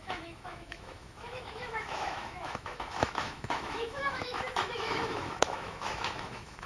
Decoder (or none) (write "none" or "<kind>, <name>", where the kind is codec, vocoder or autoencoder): autoencoder, DAC-VAE